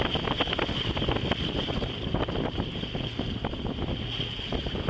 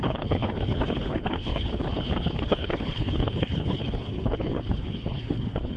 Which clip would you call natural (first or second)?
first